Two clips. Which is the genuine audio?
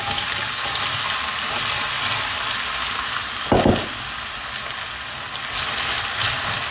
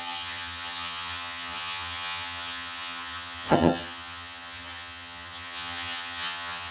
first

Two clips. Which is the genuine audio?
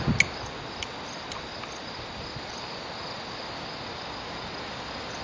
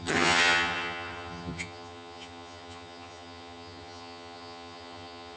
first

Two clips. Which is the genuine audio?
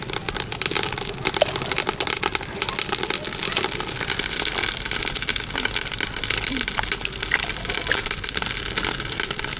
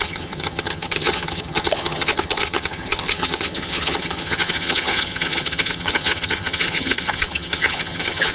first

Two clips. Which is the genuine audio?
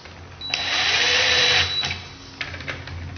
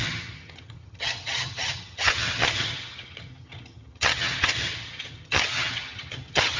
first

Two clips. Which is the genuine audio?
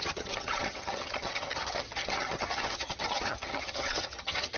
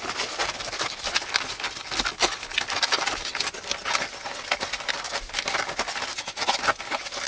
second